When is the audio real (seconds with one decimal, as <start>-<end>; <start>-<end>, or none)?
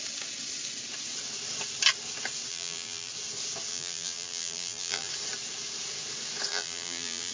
0.0-2.5; 3.1-3.7; 5.1-6.5